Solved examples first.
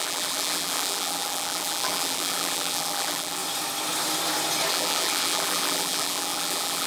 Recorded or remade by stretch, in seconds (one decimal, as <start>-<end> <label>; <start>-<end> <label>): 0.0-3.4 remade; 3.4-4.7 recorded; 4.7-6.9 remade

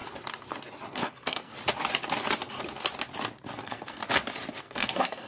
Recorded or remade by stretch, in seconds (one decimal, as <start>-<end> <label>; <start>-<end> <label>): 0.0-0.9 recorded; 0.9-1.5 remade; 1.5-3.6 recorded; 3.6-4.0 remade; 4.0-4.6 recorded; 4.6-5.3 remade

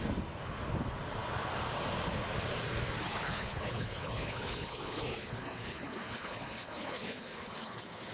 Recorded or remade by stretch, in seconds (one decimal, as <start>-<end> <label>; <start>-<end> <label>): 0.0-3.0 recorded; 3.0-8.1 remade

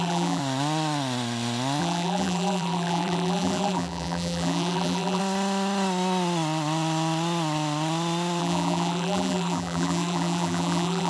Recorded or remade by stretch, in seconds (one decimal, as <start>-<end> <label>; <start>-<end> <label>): 0.0-0.4 remade; 0.4-1.8 recorded; 1.8-5.2 remade; 5.2-8.4 recorded; 8.4-11.1 remade

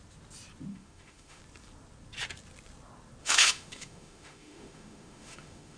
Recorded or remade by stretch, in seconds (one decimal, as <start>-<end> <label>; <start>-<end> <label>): 0.0-0.7 recorded; 0.7-1.4 remade; 1.4-3.2 recorded; 3.2-5.8 remade